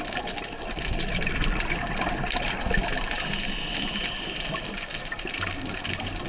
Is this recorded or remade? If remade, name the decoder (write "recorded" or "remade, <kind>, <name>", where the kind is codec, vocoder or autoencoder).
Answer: recorded